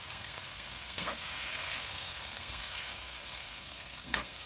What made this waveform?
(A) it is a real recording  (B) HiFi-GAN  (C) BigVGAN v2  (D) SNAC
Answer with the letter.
D